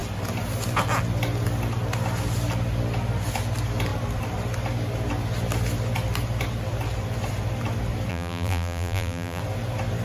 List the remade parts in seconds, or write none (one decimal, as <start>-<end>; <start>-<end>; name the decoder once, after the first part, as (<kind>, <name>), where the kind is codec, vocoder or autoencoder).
8.1-9.4 (vocoder, BigVGAN v2)